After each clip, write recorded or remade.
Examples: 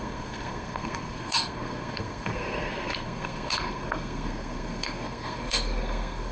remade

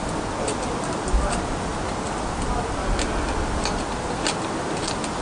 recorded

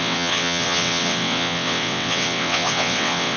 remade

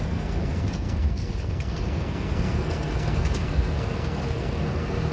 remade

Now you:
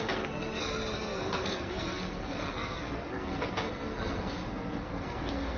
remade